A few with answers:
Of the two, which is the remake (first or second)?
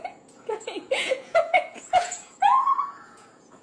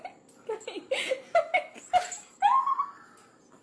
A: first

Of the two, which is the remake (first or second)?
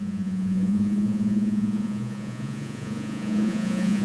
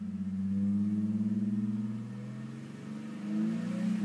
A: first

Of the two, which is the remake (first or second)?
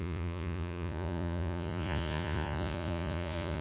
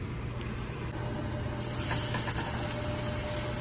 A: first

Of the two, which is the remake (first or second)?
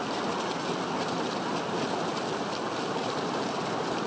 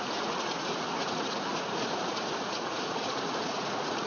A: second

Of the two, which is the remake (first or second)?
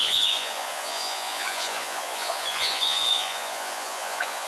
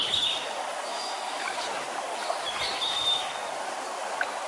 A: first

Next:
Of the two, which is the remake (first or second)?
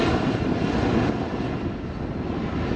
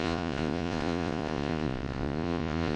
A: second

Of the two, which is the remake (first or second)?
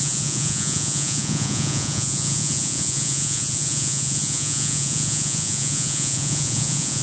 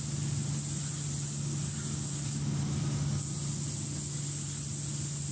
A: first